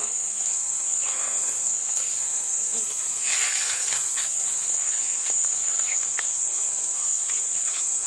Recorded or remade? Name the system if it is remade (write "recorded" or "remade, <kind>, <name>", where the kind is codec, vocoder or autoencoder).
remade, codec, SNAC